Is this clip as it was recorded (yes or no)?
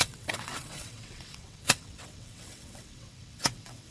no